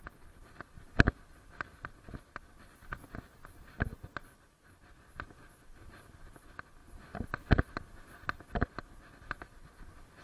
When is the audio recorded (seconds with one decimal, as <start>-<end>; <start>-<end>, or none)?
0.0-10.2